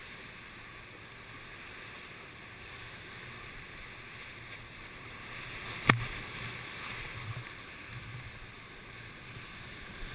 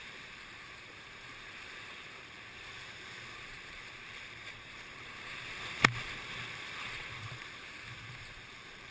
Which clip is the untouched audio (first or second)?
first